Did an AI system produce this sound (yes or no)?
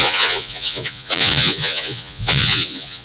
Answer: yes